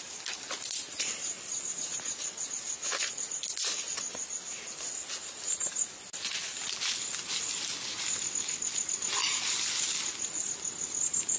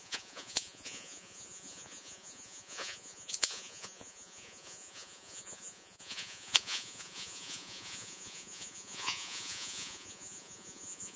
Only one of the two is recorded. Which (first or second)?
first